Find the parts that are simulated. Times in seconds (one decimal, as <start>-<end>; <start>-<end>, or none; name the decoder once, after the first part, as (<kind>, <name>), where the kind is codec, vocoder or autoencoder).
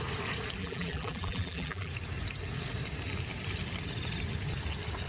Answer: 0.6-1.9 (vocoder, BigVGAN v2)